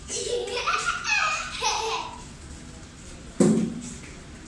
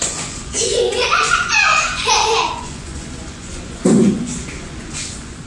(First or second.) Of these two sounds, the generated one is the second